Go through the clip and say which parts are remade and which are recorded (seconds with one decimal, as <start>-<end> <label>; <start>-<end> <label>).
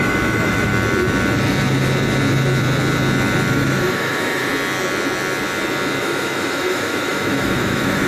0.0-0.7 remade; 0.7-3.5 recorded; 3.5-4.5 remade; 4.5-6.0 recorded; 6.0-8.1 remade